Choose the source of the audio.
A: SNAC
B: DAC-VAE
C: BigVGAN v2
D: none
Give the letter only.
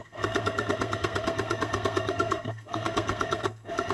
A